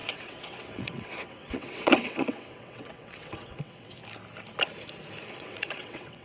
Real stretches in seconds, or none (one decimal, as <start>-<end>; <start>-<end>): 4.0-5.3